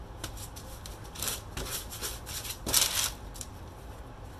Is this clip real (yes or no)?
yes